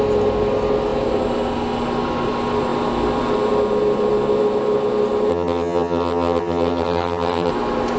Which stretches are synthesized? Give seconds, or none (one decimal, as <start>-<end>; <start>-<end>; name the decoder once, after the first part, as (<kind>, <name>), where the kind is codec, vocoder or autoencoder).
5.3-7.5 (vocoder, HiFi-GAN)